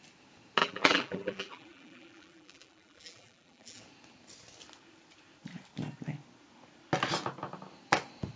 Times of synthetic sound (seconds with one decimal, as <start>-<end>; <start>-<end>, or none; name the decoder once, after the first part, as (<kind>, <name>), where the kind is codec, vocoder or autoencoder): 0.6-3.8 (vocoder, BigVGAN v2)